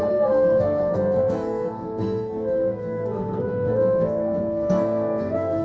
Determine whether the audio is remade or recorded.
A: remade